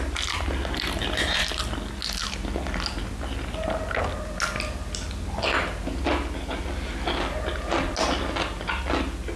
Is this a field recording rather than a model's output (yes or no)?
yes